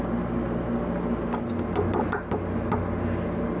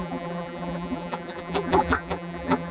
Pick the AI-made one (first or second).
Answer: second